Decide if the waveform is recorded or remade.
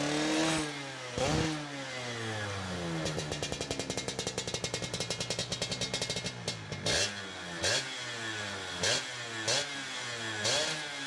recorded